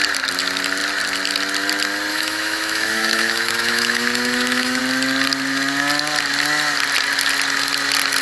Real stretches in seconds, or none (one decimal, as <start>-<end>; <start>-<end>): 0.0-2.1; 4.8-8.2